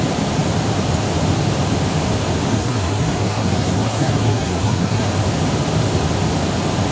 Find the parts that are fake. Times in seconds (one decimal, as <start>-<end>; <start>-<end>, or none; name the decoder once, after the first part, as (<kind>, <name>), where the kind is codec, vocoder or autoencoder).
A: 2.5-5.1 (codec, SNAC)